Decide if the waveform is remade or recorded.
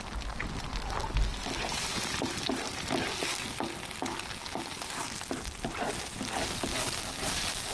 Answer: recorded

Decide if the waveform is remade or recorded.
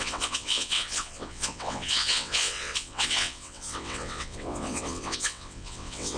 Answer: remade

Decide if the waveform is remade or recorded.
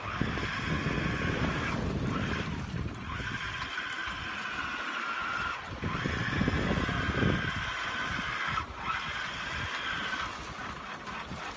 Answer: recorded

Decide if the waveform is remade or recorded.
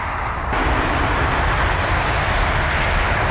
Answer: recorded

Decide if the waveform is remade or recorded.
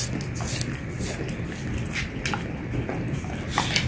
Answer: recorded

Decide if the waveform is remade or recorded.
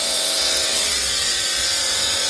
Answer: remade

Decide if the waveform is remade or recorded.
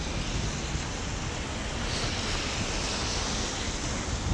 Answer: recorded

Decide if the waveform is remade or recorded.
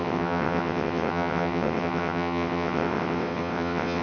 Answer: remade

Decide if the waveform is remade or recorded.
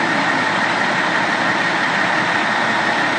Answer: recorded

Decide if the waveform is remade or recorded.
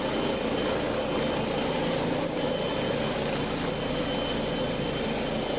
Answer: recorded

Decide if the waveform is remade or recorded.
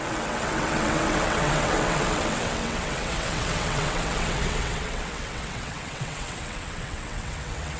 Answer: remade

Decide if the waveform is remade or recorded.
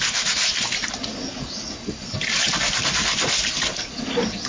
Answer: recorded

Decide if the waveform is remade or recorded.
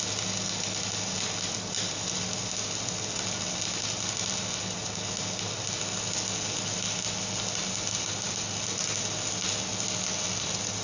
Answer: recorded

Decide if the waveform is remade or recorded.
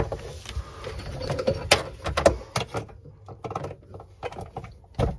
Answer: recorded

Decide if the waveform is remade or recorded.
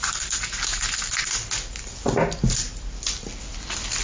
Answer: recorded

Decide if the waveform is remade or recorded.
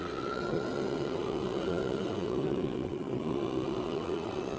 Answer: remade